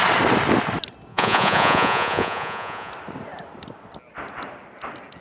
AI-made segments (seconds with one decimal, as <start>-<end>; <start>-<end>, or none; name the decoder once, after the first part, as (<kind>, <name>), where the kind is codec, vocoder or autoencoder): 1.1-2.9 (vocoder, Vocos)